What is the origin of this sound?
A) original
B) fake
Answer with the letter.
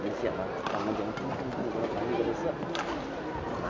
A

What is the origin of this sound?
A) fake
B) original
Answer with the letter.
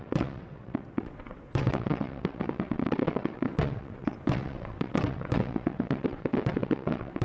A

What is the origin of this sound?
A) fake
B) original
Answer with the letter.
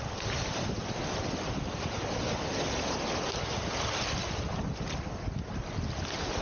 B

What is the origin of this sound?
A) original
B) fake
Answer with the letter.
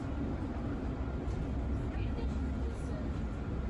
A